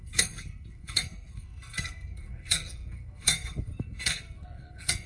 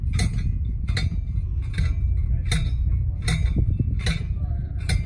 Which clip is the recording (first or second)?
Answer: second